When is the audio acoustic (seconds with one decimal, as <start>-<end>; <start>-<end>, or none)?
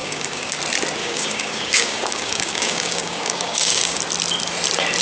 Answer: 0.6-1.0; 4.0-5.0